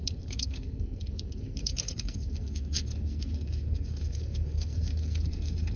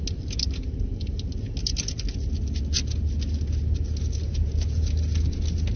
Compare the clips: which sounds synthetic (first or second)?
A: first